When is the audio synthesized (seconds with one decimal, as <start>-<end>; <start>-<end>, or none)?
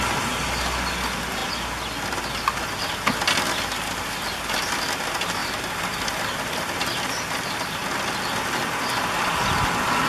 none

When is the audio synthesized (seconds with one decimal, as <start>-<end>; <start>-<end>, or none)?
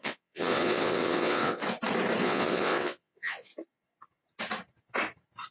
0.0-1.6; 2.2-3.5